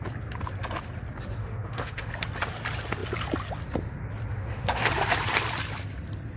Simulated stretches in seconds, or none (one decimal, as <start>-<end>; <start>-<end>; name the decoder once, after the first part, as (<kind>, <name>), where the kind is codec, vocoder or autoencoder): 1.4-2.1 (autoencoder, DAC-VAE); 4.3-4.9